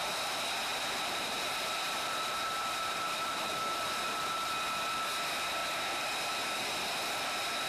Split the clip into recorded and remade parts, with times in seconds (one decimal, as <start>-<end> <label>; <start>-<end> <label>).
0.0-0.7 recorded; 0.7-4.5 remade; 4.5-7.7 recorded